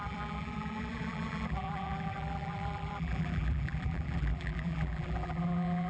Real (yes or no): no